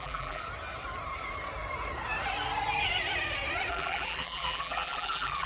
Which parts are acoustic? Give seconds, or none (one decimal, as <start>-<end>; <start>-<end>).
0.4-3.7